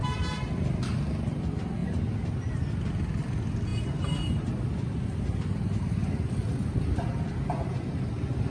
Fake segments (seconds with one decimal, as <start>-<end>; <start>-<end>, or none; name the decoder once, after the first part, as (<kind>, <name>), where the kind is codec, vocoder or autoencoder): none